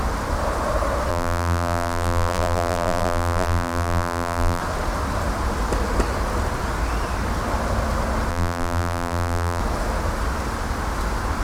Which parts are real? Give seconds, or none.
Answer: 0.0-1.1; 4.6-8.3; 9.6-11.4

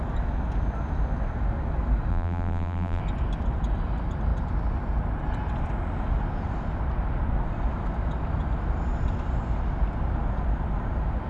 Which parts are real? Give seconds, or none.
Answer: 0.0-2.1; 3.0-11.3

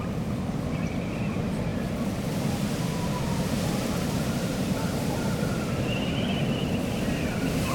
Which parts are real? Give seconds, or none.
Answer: none